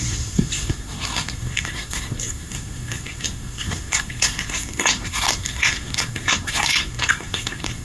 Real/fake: fake